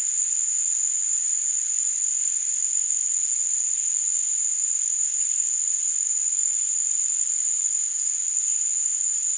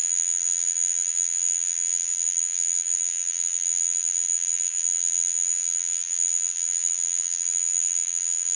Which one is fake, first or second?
second